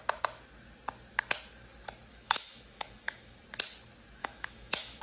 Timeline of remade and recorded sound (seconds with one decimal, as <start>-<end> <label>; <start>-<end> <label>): 0.0-2.1 recorded; 2.1-3.4 remade; 3.4-4.2 recorded; 4.2-5.0 remade